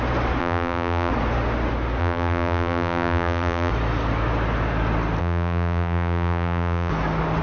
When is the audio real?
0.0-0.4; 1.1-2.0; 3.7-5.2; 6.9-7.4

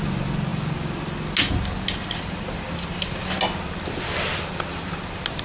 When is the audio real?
0.0-5.4

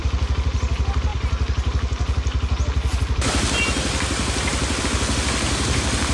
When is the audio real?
0.0-6.1

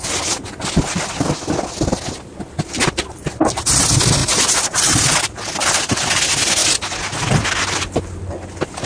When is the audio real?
0.0-4.2; 5.0-8.9

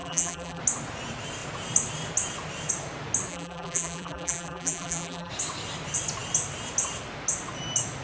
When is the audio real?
0.6-3.3; 5.3-8.0

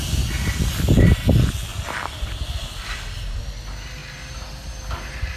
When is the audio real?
0.0-1.7; 3.4-5.4